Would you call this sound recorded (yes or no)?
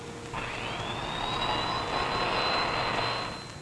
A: yes